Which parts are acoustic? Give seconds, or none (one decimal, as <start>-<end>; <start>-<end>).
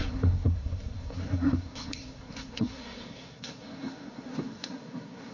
none